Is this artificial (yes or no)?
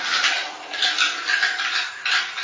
no